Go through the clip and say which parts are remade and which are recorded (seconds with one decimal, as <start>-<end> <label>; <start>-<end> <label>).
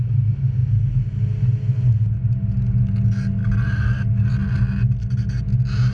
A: 0.0-5.9 recorded